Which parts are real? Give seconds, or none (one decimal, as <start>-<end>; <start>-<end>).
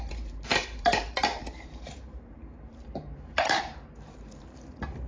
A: none